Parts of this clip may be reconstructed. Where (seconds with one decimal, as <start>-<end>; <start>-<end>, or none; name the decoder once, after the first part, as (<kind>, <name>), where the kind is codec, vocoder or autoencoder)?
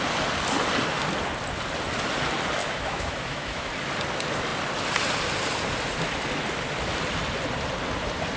2.6-3.7 (autoencoder, DAC-VAE)